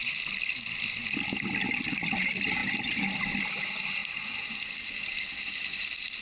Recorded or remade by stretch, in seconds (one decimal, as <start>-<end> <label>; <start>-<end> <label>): 0.0-6.2 recorded